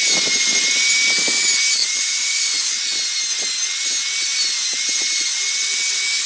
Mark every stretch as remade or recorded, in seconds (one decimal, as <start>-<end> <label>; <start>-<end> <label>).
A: 0.0-1.8 recorded; 1.8-2.8 remade; 2.8-6.3 recorded